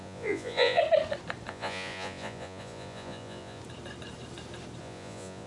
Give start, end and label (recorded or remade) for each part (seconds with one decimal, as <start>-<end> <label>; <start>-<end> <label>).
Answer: 0.0-0.8 remade; 0.8-1.5 recorded; 1.5-3.6 remade; 3.6-4.8 recorded; 4.8-5.5 remade

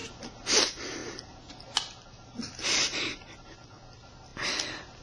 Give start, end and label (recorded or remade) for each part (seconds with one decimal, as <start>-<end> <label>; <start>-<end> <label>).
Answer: 0.0-5.0 recorded

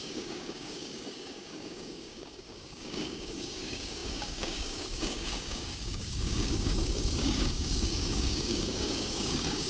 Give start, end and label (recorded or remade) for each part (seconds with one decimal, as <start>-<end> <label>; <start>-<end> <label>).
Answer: 0.0-9.7 remade

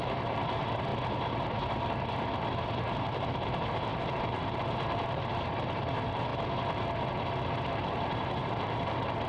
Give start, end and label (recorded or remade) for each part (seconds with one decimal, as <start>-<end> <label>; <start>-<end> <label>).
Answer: 0.0-0.9 remade; 0.9-3.0 recorded; 3.0-6.3 remade; 6.3-7.3 recorded; 7.3-9.3 remade

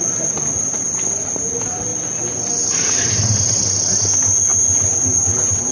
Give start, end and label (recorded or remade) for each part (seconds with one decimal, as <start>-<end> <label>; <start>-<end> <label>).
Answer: 0.0-4.5 recorded; 4.5-5.7 remade